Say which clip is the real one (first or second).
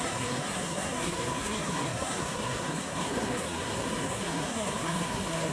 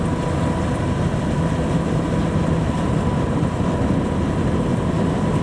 second